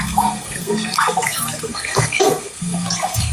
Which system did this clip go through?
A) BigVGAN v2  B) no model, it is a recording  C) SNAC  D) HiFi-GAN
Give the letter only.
C